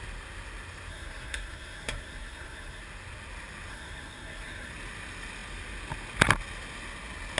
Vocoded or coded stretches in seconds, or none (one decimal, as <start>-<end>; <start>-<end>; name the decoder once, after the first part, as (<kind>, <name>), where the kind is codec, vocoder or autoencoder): 0.9-2.8 (codec, SNAC); 3.7-4.7